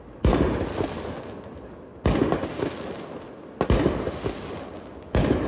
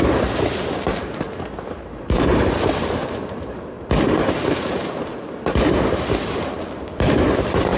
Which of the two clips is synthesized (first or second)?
second